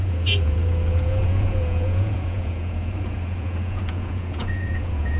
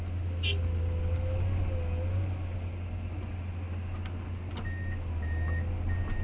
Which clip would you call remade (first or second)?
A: first